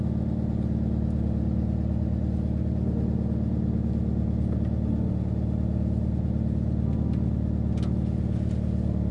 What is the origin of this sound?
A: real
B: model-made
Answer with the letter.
A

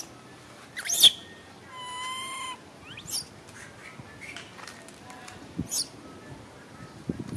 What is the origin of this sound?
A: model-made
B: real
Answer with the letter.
B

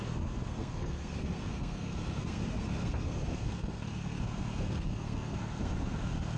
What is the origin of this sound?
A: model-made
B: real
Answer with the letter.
A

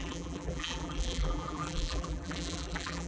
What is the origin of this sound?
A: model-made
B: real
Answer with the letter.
A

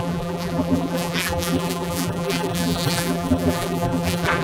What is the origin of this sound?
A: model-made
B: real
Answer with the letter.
A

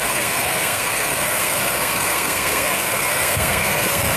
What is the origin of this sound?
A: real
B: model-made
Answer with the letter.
B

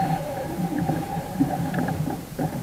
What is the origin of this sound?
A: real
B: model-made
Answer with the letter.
B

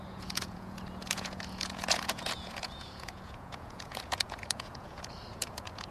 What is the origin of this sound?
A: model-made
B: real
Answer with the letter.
A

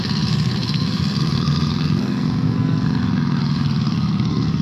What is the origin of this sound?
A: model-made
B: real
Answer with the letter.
A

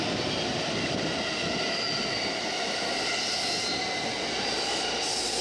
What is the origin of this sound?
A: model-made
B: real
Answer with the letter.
B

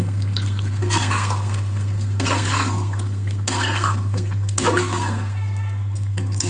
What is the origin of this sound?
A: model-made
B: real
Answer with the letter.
A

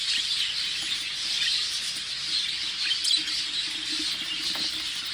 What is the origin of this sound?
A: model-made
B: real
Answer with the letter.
B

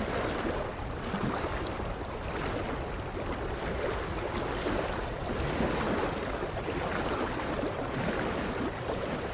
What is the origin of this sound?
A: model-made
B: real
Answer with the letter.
B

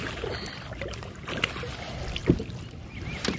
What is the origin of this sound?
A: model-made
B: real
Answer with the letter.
B